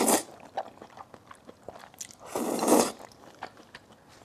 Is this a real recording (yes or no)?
yes